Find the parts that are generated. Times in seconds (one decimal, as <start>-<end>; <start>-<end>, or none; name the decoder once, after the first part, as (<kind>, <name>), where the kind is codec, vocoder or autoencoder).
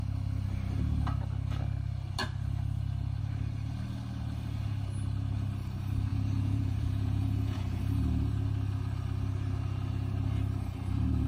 6.1-7.8 (vocoder, Vocos)